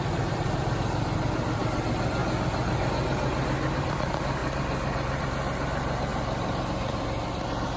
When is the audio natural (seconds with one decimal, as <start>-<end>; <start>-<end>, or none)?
2.2-3.8; 4.4-5.2